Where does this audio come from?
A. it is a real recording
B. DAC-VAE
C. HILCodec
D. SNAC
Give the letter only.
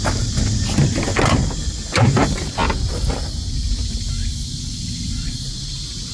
A